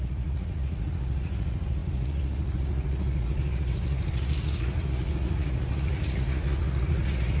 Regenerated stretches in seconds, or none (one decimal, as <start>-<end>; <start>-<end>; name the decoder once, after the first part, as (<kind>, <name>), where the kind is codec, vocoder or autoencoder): 0.0-7.4 (vocoder, Vocos)